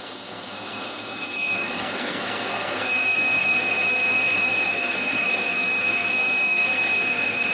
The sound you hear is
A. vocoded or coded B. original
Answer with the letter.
A